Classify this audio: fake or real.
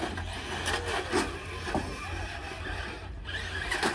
real